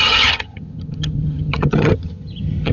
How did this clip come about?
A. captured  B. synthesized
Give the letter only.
B